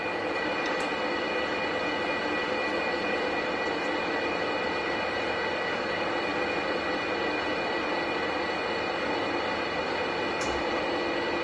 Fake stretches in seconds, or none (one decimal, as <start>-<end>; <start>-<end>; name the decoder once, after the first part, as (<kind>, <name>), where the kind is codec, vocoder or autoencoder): none